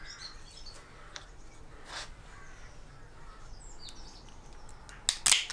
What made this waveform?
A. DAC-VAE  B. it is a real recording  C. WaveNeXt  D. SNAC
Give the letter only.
B